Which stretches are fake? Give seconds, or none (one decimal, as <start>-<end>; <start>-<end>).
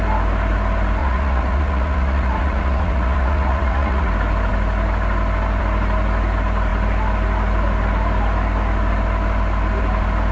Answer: 1.0-4.1